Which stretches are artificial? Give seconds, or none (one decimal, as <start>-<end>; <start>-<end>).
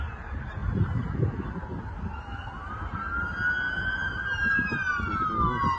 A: none